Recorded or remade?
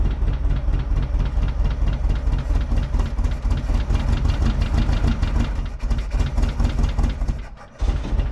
recorded